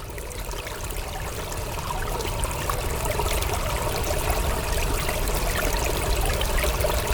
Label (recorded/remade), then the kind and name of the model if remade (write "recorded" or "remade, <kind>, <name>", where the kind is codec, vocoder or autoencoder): recorded